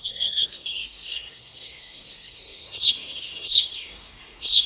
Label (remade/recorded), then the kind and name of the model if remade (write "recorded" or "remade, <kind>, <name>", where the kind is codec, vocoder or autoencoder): remade, codec, SNAC